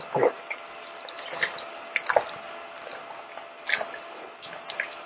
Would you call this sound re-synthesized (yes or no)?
no